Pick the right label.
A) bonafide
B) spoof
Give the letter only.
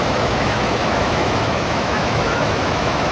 B